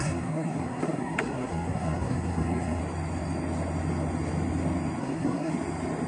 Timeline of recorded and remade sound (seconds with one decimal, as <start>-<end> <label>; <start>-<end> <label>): 0.0-2.8 remade; 2.8-5.0 recorded; 5.0-5.5 remade; 5.5-6.1 recorded